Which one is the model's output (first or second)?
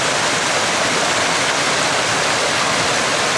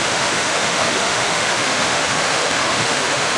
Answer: second